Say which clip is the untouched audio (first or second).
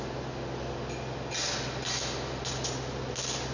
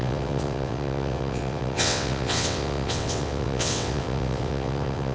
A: first